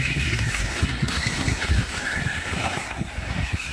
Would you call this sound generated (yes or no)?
yes